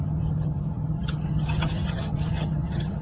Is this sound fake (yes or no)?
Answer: yes